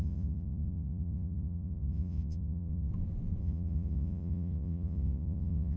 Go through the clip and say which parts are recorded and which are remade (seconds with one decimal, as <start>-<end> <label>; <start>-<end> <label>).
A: 0.0-2.9 remade; 2.9-3.4 recorded; 3.4-5.8 remade